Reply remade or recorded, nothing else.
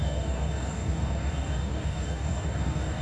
remade